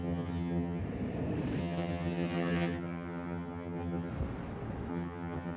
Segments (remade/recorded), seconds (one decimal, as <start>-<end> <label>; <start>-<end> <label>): 0.0-0.8 remade; 0.8-1.6 recorded; 1.6-4.1 remade; 4.1-4.9 recorded; 4.9-5.6 remade